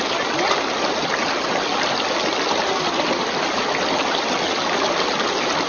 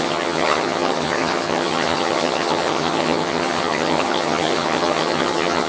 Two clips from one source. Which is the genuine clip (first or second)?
first